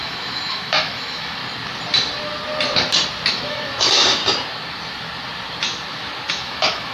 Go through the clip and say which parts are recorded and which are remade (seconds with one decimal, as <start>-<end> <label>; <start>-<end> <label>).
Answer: 0.0-1.4 remade; 1.4-3.3 recorded; 3.3-4.2 remade; 4.2-6.3 recorded; 6.3-6.9 remade